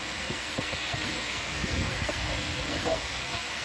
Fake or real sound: fake